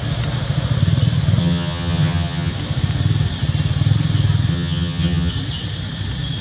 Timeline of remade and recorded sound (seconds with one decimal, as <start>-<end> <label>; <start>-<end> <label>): 0.0-1.4 recorded; 1.4-2.5 remade; 2.5-4.5 recorded; 4.5-5.3 remade; 5.3-6.4 recorded